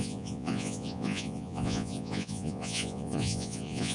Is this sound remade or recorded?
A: remade